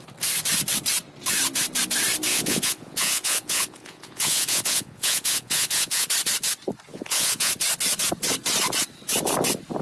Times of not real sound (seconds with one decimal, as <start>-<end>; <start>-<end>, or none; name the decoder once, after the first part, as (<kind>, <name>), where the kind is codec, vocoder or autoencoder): 2.3-6.1 (vocoder, Vocos); 6.9-7.5